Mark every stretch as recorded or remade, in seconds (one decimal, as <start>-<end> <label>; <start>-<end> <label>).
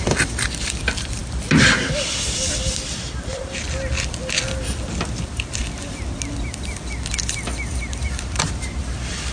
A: 0.0-9.3 recorded